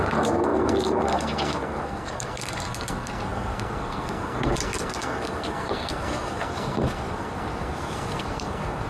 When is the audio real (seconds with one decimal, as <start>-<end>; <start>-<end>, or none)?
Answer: none